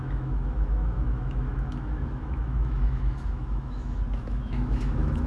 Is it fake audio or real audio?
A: fake